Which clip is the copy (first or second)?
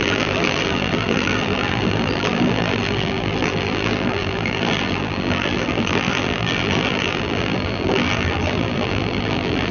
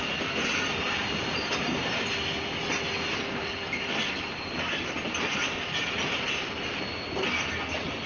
first